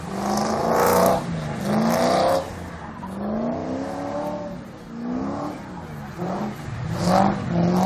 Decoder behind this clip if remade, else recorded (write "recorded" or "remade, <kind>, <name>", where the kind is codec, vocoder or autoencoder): recorded